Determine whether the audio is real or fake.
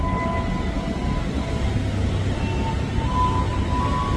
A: real